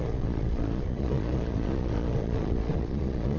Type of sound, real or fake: fake